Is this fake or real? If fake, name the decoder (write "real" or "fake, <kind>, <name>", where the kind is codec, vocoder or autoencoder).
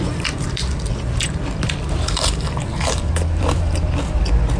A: fake, vocoder, BigVGAN v2